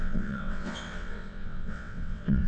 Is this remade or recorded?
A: remade